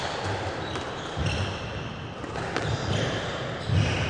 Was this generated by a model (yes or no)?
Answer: no